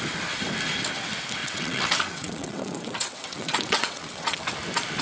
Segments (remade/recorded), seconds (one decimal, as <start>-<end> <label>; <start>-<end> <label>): 0.0-1.4 recorded; 1.4-4.4 remade; 4.4-5.0 recorded